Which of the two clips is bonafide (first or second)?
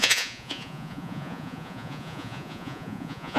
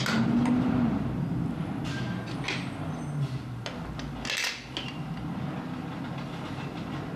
second